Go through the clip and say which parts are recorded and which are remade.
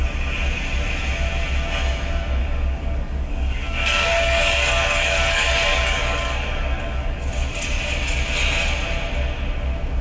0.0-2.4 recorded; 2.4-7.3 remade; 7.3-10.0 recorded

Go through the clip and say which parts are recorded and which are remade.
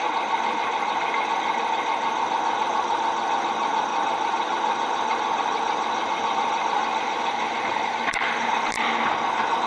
0.0-9.7 recorded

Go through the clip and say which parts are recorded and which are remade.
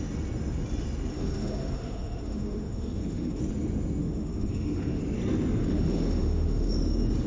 0.0-1.1 recorded; 1.1-3.4 remade; 3.4-4.0 recorded; 4.0-5.0 remade; 5.0-5.6 recorded; 5.6-6.7 remade; 6.7-7.3 recorded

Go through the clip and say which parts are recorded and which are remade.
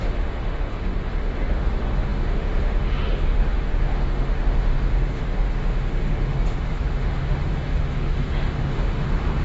0.0-9.4 remade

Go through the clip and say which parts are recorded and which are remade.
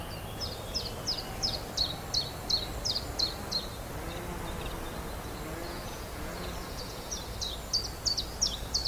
0.0-5.6 recorded; 5.6-7.2 remade; 7.2-8.9 recorded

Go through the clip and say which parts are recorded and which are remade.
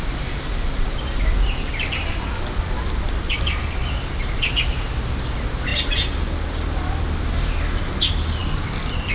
0.0-9.1 recorded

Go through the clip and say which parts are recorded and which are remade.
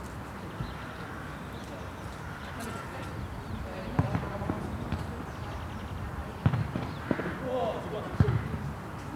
0.0-9.2 recorded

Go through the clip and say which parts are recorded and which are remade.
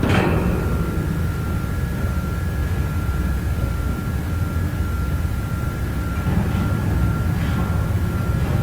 0.0-8.6 recorded